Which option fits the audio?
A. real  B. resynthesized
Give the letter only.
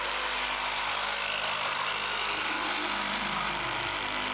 A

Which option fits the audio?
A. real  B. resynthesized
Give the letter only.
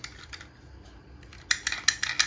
A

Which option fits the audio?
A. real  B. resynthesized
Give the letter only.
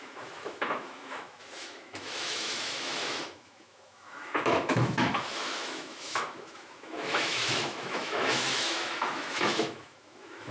B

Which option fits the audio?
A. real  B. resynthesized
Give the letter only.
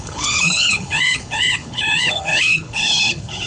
B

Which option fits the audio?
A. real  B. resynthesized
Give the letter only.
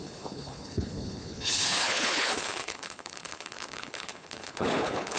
B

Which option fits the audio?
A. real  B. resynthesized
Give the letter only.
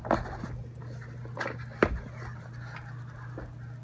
A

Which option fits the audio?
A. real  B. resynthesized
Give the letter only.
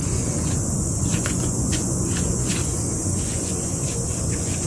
B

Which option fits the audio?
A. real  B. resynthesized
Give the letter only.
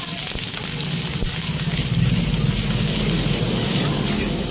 A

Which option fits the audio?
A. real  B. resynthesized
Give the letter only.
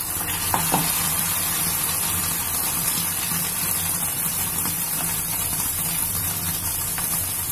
B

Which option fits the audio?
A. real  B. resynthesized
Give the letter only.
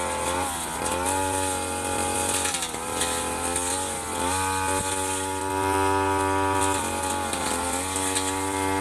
A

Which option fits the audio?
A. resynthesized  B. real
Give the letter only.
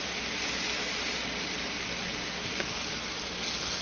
B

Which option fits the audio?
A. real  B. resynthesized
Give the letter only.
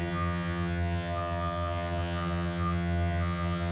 B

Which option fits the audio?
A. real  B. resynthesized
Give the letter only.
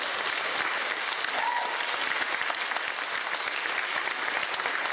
A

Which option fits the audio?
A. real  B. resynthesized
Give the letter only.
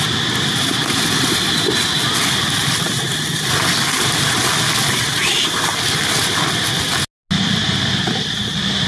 A